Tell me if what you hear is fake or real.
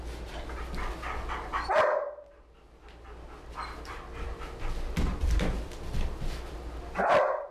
real